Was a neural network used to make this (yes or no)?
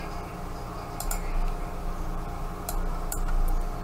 no